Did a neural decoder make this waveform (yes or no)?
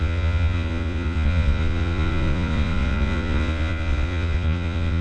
yes